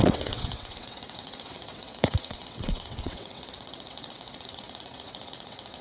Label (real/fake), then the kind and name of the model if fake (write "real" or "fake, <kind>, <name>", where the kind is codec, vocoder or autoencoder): fake, vocoder, WaveNeXt